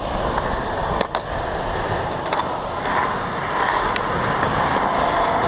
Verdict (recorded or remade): recorded